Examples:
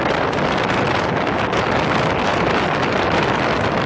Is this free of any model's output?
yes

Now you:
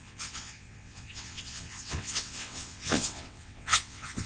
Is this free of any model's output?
no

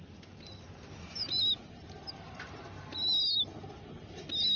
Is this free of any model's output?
yes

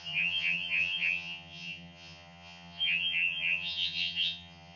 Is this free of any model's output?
no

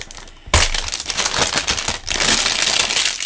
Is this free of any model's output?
yes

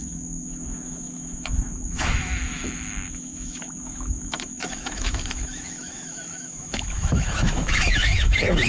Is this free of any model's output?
no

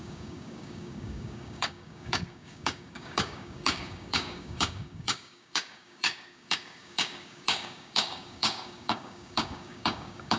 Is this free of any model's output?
no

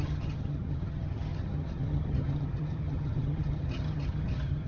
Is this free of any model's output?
no